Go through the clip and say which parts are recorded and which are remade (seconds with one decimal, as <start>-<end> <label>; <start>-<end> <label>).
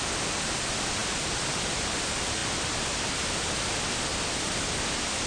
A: 0.0-5.3 recorded